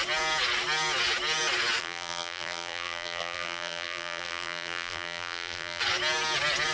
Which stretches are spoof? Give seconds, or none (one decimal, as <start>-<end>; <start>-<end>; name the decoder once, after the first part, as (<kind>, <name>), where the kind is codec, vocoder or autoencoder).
1.8-5.8 (vocoder, BigVGAN v2)